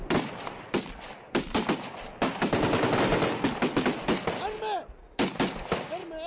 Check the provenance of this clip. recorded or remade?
recorded